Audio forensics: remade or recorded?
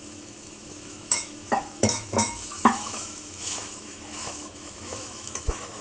remade